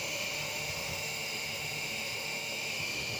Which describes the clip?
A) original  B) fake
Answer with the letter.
B